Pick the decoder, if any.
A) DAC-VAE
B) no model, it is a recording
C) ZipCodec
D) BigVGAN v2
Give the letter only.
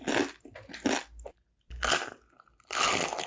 B